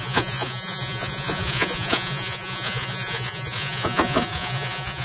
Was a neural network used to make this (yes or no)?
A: yes